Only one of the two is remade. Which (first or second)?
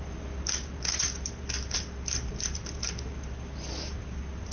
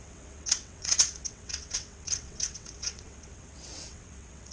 second